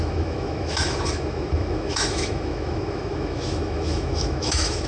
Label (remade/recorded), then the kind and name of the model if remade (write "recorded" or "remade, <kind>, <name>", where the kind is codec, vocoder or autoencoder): remade, autoencoder, DAC-VAE